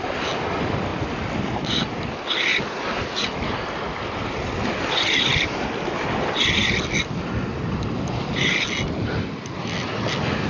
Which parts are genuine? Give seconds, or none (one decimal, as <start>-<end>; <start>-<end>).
0.0-10.5